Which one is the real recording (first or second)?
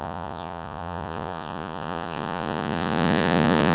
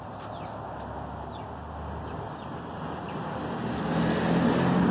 second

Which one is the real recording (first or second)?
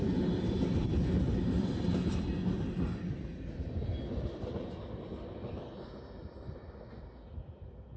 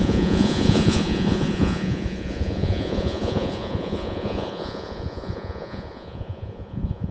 first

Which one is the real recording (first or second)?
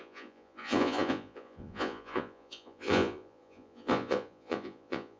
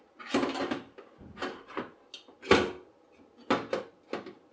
second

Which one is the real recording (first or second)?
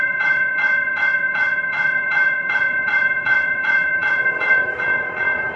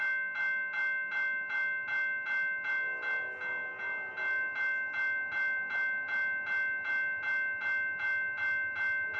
second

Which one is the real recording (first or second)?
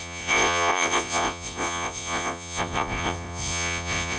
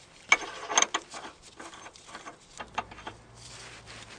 second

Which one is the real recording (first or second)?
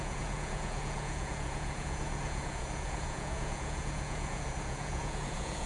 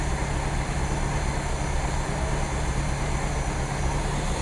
second